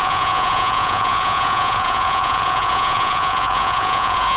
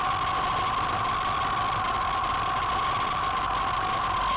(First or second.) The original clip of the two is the second